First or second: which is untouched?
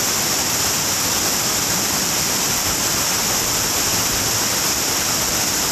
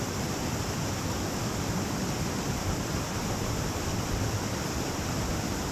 first